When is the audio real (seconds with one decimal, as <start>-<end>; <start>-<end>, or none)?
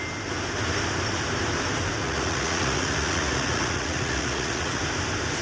0.0-2.0; 4.8-5.4